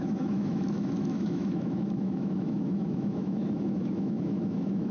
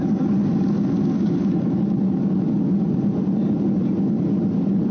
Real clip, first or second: second